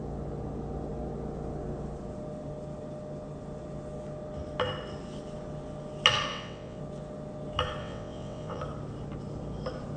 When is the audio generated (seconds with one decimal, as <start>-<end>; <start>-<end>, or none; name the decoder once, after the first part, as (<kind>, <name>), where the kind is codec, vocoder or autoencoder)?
6.3-6.8 (vocoder, WaveNeXt); 7.8-8.6